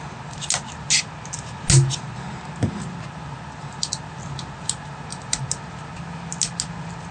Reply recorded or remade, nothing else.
recorded